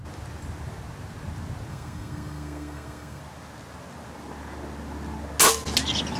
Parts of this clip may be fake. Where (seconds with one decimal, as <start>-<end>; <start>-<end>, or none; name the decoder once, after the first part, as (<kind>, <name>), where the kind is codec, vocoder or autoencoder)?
1.7-3.2 (codec, SNAC)